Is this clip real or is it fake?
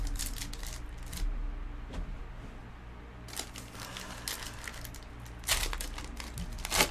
real